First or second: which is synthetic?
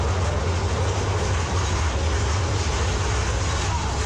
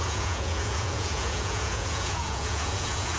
second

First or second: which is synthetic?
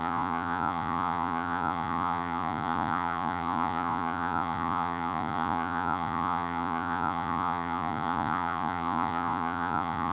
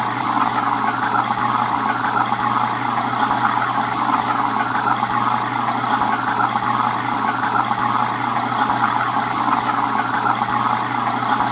first